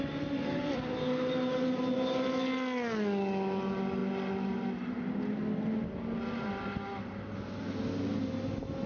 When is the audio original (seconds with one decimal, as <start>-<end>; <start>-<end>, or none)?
0.0-8.9